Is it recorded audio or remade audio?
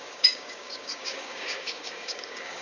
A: remade